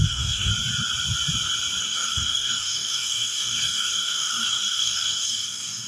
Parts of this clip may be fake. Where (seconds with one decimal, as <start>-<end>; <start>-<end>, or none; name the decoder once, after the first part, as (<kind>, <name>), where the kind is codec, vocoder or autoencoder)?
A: 0.0-0.5 (codec, DAC); 1.8-5.9